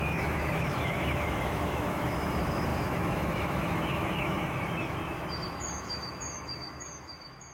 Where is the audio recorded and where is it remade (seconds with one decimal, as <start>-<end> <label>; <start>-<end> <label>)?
0.0-7.5 remade